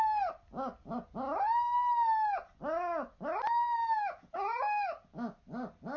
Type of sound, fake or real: real